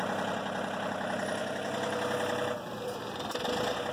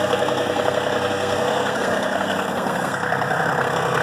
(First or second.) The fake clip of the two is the second